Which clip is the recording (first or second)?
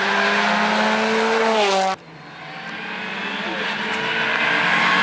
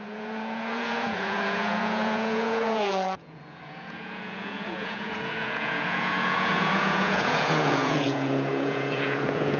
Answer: first